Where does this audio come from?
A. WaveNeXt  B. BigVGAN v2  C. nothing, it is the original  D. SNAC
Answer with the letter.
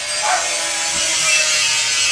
B